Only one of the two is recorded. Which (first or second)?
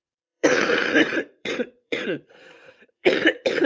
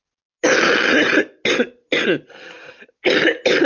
second